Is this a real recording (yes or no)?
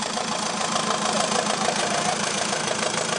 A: no